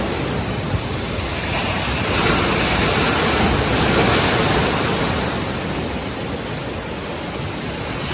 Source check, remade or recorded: recorded